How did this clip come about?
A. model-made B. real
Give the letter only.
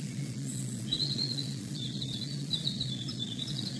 A